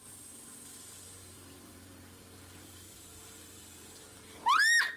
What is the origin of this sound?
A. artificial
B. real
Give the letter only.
A